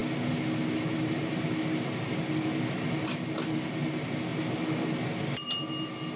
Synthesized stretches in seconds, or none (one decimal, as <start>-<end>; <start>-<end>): none